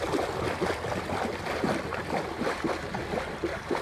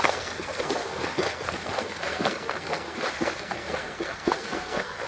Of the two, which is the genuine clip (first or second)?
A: first